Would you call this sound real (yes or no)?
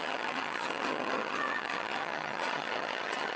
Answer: no